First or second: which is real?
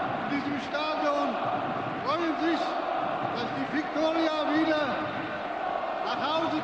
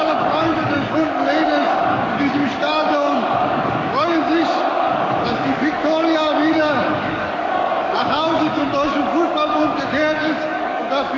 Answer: first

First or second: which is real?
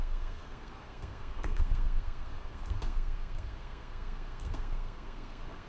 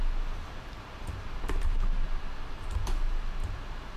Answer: second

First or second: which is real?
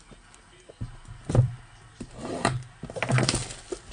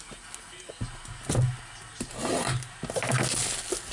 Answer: second